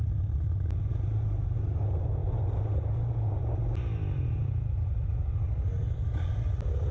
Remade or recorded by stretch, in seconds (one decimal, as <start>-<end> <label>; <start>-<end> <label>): 0.0-6.9 recorded